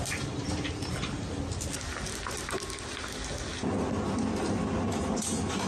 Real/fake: real